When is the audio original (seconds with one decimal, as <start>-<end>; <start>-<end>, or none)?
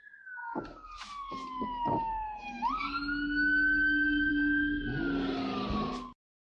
0.0-6.5